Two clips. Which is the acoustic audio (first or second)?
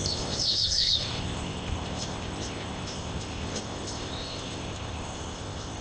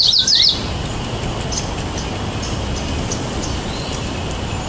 second